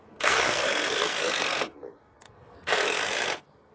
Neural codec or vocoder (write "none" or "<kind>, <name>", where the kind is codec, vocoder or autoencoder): codec, SNAC